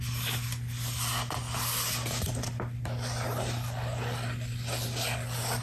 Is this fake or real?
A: real